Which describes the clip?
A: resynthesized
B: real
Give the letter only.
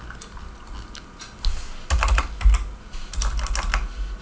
B